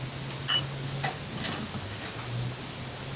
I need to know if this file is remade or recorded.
recorded